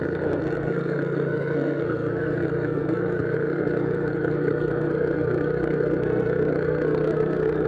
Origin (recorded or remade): remade